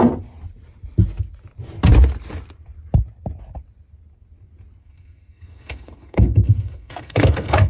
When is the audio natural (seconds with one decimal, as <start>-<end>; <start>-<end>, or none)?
0.0-4.8